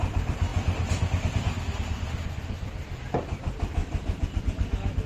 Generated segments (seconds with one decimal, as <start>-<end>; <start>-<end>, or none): 0.0-3.8; 4.4-5.1